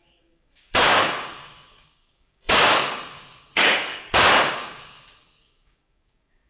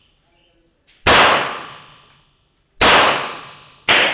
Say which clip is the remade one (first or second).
first